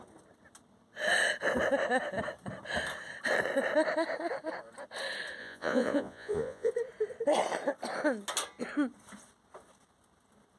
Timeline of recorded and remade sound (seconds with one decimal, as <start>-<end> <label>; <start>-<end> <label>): 0.0-5.4 recorded; 5.4-6.7 remade; 6.7-10.6 recorded